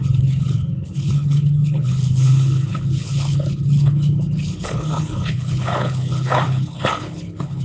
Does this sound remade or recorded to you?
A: remade